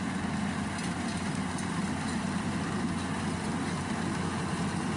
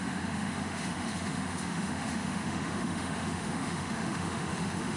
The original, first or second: first